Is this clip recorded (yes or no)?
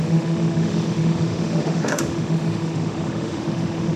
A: no